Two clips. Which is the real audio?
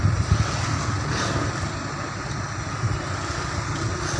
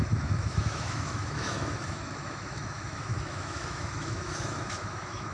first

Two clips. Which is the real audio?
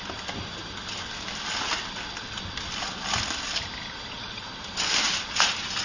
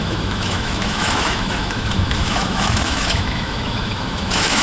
first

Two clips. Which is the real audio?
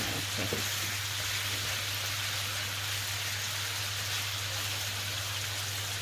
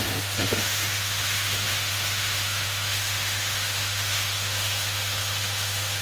first